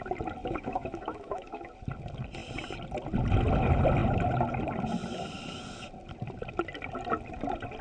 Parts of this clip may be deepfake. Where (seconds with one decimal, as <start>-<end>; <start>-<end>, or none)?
0.4-1.7